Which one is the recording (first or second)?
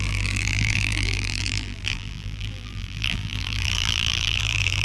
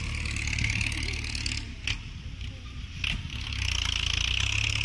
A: second